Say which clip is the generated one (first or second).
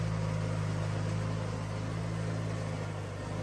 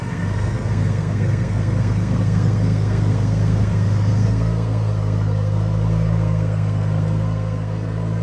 second